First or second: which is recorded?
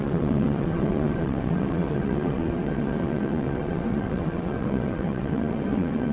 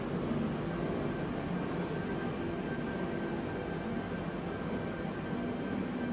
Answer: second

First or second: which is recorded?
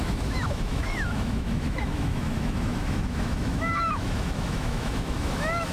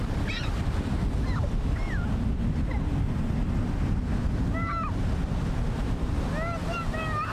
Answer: second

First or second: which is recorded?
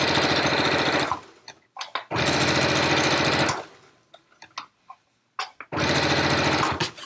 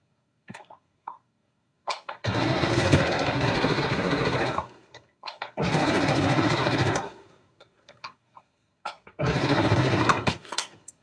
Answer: first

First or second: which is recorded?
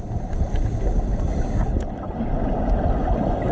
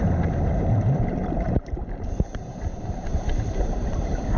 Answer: first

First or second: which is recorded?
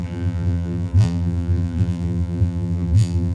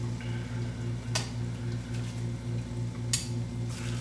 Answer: second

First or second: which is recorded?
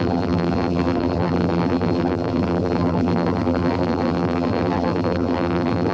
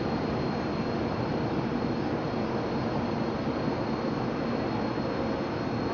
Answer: second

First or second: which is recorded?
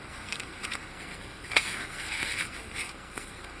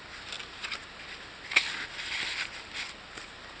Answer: second